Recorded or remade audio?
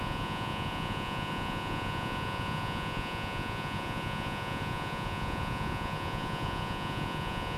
remade